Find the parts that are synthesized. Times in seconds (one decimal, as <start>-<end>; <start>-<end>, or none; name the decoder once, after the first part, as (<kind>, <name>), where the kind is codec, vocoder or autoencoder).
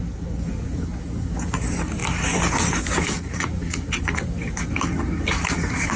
0.0-6.0 (codec, DAC)